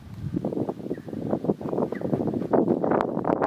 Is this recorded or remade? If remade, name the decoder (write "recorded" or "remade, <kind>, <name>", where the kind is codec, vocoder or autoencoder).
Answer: recorded